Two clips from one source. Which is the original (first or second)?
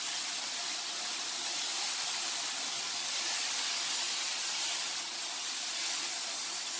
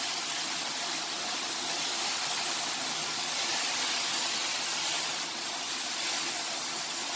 second